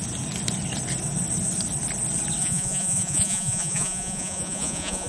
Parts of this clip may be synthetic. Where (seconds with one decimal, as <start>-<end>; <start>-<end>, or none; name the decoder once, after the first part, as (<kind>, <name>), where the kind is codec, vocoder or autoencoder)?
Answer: 2.4-5.1 (vocoder, Vocos)